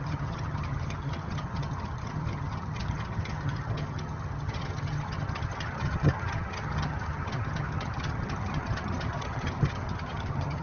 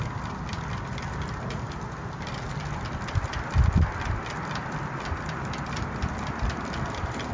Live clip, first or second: second